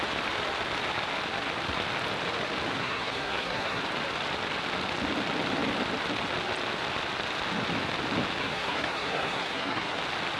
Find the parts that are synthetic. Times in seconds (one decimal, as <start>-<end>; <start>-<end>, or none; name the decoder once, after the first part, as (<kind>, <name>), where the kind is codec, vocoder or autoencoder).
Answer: 2.8-3.8 (codec, SNAC); 8.4-10.0